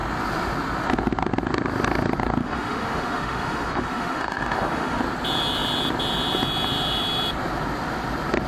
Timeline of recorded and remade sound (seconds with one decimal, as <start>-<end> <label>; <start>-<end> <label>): 0.0-2.4 recorded; 2.4-5.0 remade; 5.0-8.5 recorded

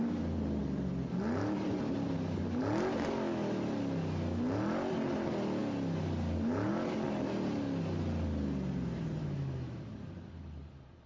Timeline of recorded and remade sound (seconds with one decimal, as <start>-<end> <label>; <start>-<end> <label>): 0.0-9.2 recorded; 9.2-9.8 remade; 9.8-11.1 recorded

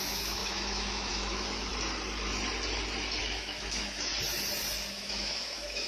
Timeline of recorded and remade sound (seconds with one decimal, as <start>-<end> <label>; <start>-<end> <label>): 0.0-1.7 remade; 1.7-3.2 recorded; 3.2-4.1 remade; 4.1-4.9 recorded; 4.9-5.9 remade

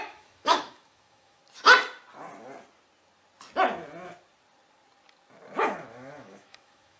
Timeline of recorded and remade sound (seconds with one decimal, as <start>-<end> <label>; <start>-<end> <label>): 0.0-1.4 remade; 1.4-5.6 recorded; 5.6-7.0 remade

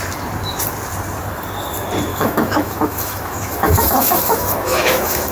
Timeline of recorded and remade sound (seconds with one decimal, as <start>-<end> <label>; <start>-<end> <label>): 0.0-2.1 recorded; 2.1-5.3 remade